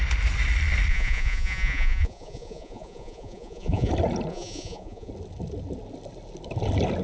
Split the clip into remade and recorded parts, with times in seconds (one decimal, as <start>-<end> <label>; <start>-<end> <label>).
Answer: 0.0-0.9 recorded; 0.9-3.9 remade; 3.9-4.3 recorded; 4.3-5.1 remade; 5.1-7.0 recorded